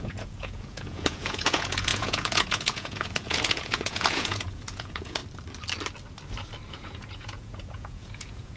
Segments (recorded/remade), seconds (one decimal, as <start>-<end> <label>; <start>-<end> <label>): 0.0-5.2 remade; 5.2-6.7 recorded; 6.7-8.6 remade